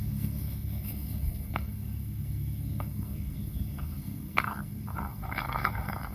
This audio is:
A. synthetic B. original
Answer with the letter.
A